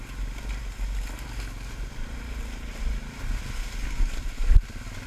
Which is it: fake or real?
real